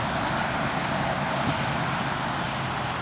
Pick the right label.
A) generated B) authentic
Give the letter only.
B